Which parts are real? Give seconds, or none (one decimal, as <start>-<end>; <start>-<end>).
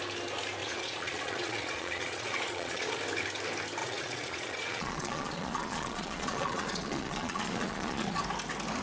0.0-0.6; 3.0-3.8; 8.2-8.8